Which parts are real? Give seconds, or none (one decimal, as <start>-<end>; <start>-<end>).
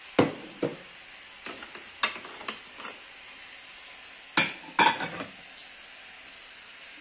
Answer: 0.0-7.0